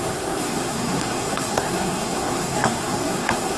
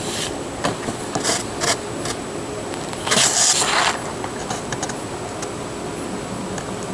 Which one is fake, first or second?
first